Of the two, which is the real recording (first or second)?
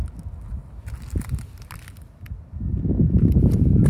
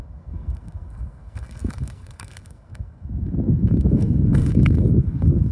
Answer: first